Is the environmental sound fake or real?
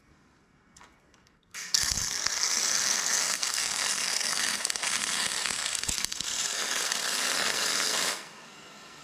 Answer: fake